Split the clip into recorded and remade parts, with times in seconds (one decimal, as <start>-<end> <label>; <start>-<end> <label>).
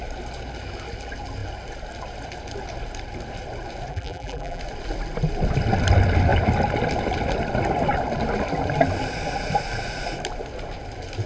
0.0-3.9 recorded; 3.9-4.6 remade; 4.6-11.3 recorded